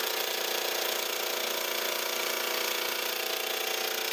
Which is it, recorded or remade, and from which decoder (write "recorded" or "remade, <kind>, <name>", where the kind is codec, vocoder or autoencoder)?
recorded